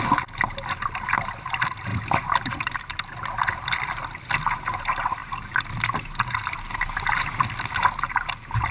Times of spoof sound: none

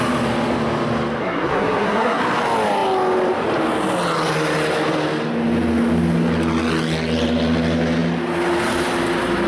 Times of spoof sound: 1.2-2.2 (codec, SNAC)

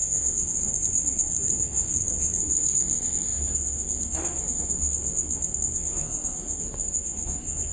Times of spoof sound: 0.0-7.7 (codec, SNAC)

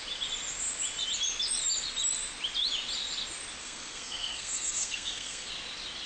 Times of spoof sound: 3.6-5.5 (codec, SNAC)

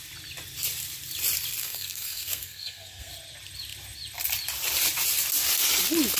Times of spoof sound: 1.6-3.1 (codec, SNAC)